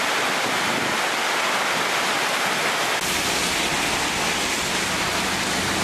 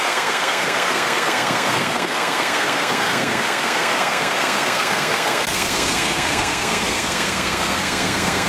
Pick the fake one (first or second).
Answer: second